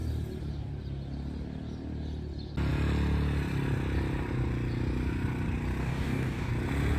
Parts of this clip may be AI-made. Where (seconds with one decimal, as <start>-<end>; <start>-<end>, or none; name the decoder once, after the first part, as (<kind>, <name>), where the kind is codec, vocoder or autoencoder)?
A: 5.8-6.5 (codec, DAC)